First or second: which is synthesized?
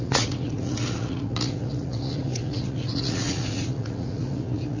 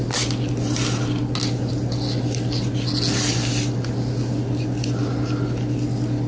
first